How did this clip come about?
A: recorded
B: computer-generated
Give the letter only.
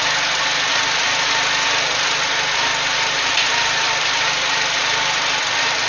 A